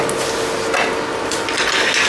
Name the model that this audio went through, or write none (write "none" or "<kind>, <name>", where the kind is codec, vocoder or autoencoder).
none